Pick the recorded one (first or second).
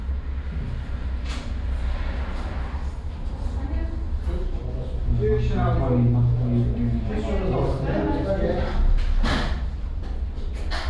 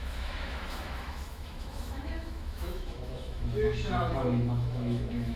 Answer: first